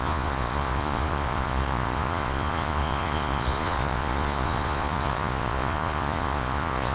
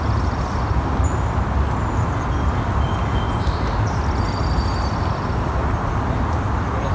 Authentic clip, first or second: second